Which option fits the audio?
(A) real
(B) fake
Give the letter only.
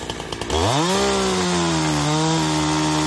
A